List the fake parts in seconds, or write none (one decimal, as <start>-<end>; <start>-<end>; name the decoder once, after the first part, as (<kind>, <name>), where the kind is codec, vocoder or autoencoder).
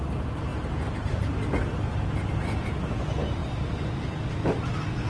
none